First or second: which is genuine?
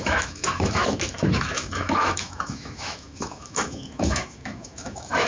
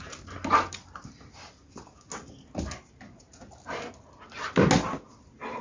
second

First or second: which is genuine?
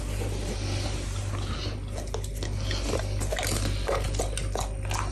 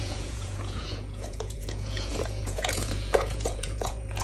first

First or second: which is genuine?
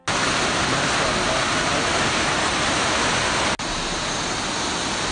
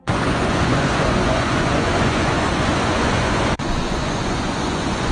first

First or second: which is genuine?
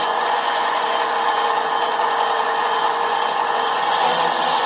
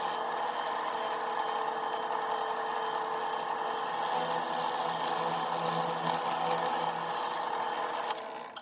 second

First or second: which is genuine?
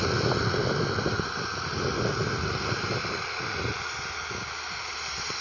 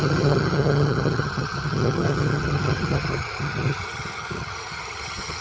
first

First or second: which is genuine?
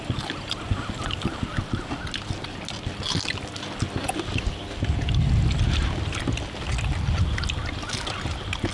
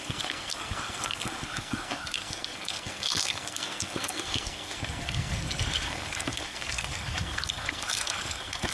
first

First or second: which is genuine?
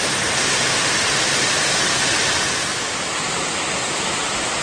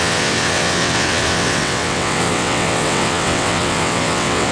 first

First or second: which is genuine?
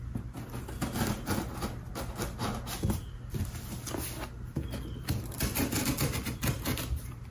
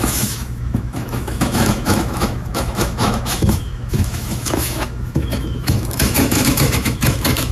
first